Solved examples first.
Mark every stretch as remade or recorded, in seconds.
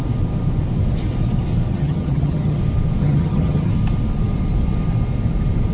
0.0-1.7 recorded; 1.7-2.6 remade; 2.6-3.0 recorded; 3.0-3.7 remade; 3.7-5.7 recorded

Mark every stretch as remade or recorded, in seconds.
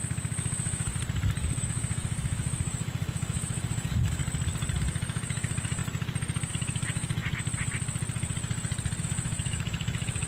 0.0-0.9 remade; 0.9-1.6 recorded; 1.6-4.2 remade; 4.2-4.8 recorded; 4.8-5.8 remade; 5.8-6.5 recorded; 6.5-7.2 remade; 7.2-9.0 recorded; 9.0-10.3 remade